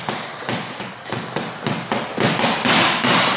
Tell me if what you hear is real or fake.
real